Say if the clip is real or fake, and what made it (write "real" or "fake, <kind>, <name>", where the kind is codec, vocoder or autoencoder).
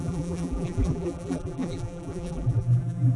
fake, vocoder, BigVGAN v2